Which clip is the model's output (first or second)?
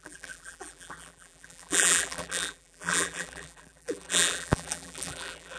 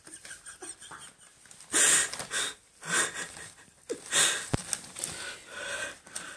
first